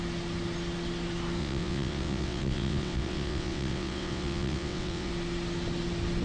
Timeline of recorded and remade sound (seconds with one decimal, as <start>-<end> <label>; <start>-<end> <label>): 0.0-1.4 recorded; 1.4-5.1 remade; 5.1-6.2 recorded